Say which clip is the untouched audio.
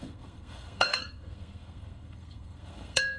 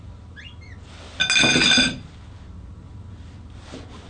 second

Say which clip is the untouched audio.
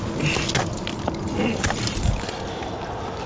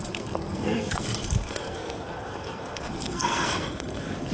first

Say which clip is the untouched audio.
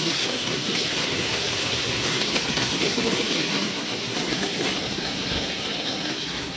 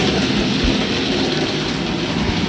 second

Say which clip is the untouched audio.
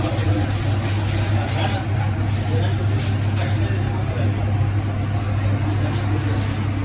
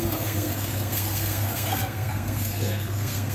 first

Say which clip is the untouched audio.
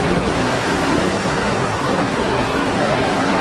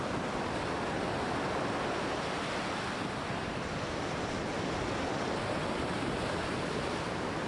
second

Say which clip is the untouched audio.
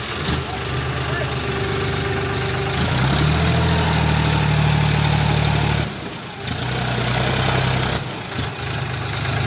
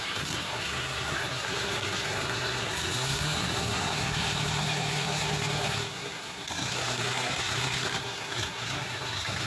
first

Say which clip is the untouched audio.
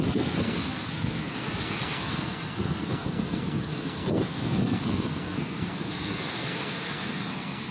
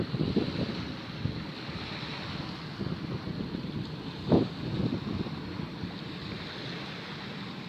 second